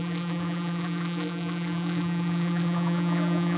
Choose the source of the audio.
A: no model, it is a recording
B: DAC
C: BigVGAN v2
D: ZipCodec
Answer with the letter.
C